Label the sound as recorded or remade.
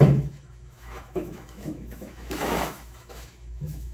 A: remade